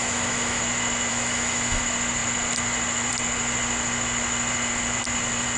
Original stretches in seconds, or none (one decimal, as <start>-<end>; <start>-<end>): 0.6-1.1; 1.8-5.6